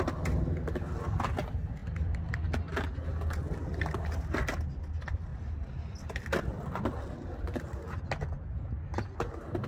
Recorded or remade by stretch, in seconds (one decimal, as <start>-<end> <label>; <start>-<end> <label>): 0.0-9.7 recorded